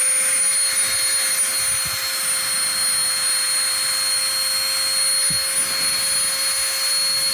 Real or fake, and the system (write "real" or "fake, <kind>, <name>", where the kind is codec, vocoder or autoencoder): real